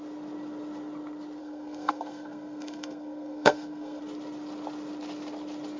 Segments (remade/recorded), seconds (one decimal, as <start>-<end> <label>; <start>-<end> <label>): 0.0-1.4 recorded; 1.4-4.0 remade; 4.0-5.8 recorded